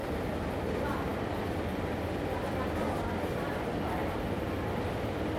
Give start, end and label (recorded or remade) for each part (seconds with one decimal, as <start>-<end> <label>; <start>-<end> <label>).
0.0-0.6 remade; 0.6-5.4 recorded